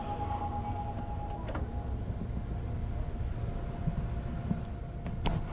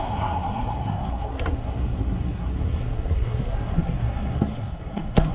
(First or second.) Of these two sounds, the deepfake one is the second